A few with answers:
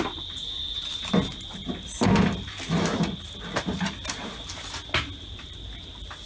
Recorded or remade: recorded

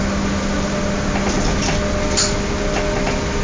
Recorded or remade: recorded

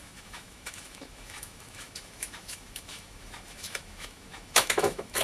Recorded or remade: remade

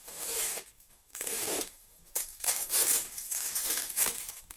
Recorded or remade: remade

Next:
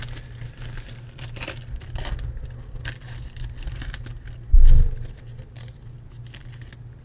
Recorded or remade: recorded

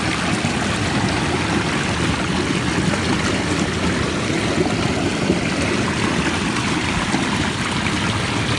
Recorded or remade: recorded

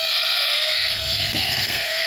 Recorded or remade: remade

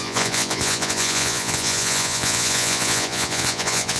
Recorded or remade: remade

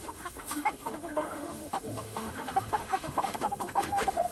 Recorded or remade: remade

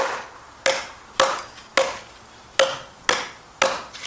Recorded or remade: recorded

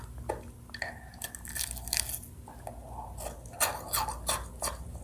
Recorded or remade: recorded